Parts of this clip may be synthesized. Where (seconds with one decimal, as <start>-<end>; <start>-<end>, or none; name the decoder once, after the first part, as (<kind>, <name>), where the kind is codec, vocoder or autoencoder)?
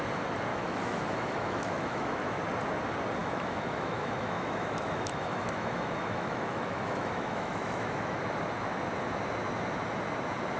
0.5-2.4 (autoencoder, DAC-VAE); 3.2-8.2